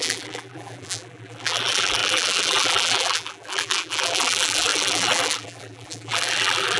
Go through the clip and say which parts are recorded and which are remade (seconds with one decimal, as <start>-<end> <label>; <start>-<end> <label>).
0.0-6.8 remade